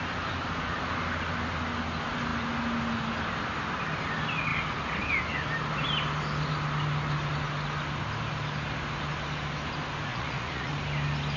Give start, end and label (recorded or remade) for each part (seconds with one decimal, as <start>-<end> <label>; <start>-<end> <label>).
0.0-10.1 recorded; 10.1-10.7 remade; 10.7-11.4 recorded